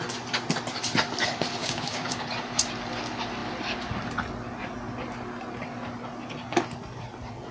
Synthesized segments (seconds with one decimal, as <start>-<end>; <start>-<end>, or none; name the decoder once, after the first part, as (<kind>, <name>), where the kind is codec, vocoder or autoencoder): 1.6-2.2 (codec, DAC)